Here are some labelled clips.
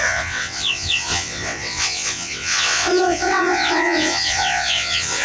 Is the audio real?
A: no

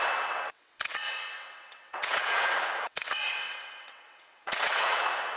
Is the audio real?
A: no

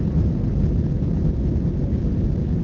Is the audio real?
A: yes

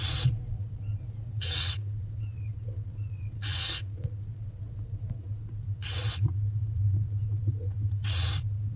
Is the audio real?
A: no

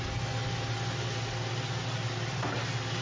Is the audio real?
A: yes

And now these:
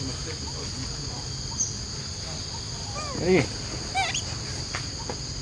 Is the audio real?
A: yes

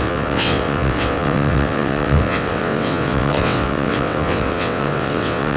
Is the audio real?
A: no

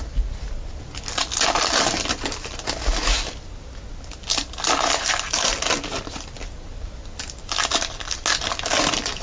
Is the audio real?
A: yes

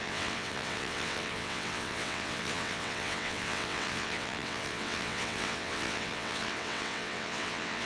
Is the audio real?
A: no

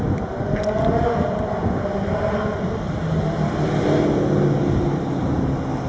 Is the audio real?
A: yes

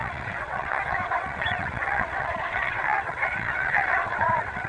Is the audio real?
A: no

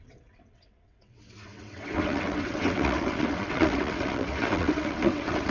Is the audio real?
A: no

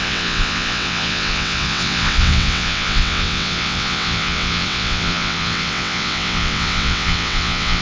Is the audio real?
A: no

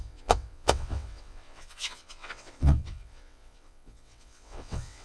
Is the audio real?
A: no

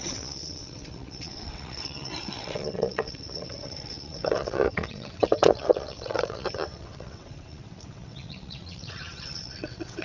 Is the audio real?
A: no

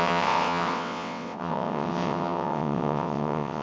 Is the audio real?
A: no